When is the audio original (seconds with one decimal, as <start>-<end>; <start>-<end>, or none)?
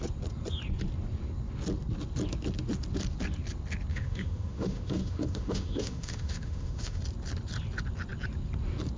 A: 0.0-3.9; 7.0-9.0